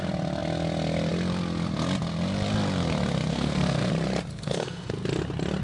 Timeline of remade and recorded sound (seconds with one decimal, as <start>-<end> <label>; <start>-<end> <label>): 0.0-3.3 recorded; 3.3-3.9 remade; 3.9-4.3 recorded; 4.3-4.9 remade; 4.9-5.6 recorded